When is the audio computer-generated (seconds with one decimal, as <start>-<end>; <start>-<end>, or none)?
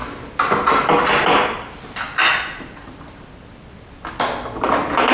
none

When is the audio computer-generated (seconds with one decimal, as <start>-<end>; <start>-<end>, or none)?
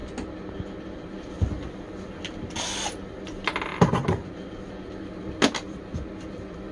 3.7-4.3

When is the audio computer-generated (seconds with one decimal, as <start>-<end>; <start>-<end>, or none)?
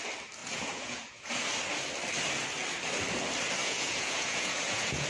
0.4-1.3; 3.6-5.1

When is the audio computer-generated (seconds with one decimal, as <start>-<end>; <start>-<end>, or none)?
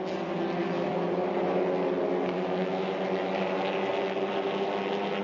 none